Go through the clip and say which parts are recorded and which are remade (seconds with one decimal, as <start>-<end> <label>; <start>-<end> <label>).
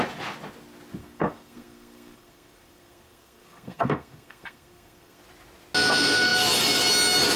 0.0-1.0 recorded; 1.0-5.2 remade; 5.2-7.4 recorded